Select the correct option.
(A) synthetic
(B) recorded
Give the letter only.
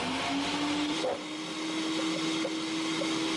B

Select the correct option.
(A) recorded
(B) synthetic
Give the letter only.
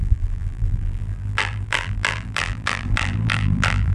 B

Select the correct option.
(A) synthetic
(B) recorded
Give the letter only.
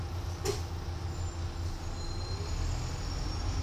B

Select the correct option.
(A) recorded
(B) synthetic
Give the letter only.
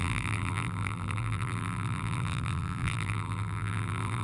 B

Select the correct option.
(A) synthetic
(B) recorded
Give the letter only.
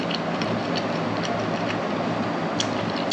B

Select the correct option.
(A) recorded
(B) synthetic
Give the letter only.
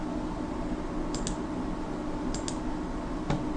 A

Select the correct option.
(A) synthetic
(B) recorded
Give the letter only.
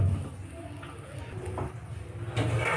B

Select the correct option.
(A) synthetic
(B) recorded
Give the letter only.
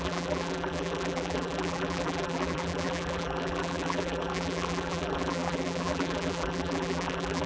A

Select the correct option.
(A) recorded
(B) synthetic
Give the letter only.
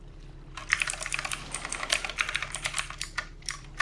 B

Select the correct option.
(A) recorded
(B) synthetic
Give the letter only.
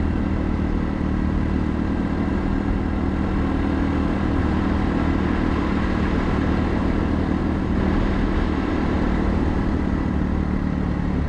B